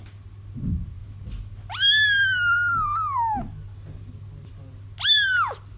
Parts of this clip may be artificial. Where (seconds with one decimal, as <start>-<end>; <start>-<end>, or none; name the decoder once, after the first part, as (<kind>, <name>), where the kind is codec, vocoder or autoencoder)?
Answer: none